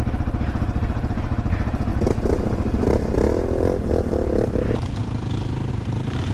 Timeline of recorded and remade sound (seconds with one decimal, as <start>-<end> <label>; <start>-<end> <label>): 0.0-1.9 remade; 1.9-5.7 recorded; 5.7-6.3 remade